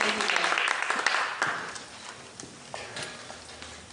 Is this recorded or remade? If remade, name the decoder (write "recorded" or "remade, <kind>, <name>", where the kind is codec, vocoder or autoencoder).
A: recorded